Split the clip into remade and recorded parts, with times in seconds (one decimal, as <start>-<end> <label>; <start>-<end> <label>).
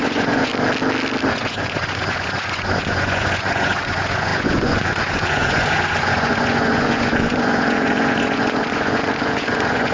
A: 0.0-0.5 remade; 0.5-1.3 recorded; 1.3-9.9 remade